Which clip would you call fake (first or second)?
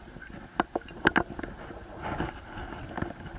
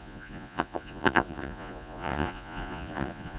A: second